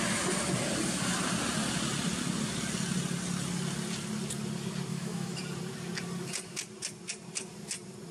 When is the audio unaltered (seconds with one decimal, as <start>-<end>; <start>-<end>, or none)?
0.0-4.9; 5.4-8.1